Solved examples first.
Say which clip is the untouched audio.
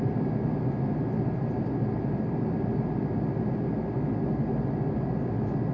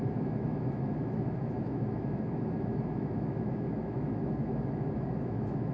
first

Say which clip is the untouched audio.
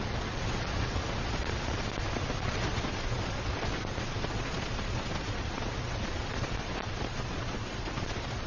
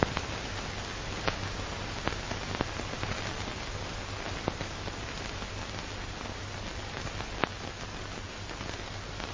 second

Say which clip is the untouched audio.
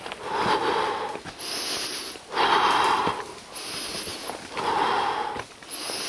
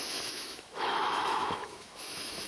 first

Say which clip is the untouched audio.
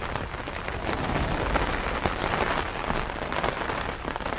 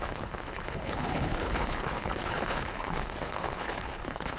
first